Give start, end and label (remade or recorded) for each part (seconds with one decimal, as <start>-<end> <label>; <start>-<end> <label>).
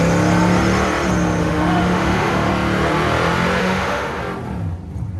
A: 0.0-1.4 recorded; 1.4-2.5 remade; 2.5-3.6 recorded; 3.6-4.2 remade; 4.2-5.2 recorded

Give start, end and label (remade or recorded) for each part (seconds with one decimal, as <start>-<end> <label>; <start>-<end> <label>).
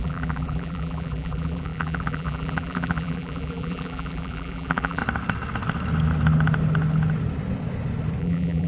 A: 0.0-5.0 remade; 5.0-8.2 recorded; 8.2-8.7 remade